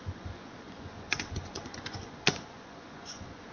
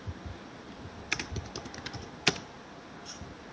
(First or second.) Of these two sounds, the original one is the second